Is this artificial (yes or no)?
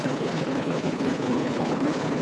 yes